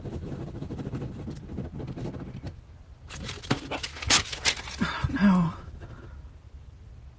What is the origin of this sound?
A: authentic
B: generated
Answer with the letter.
A